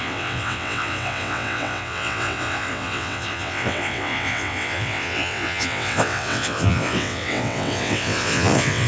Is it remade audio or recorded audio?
remade